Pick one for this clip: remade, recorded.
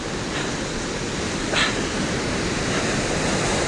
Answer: recorded